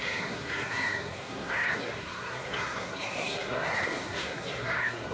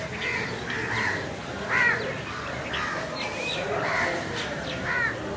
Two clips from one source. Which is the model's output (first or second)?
first